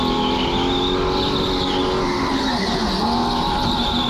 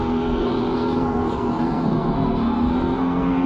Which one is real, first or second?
first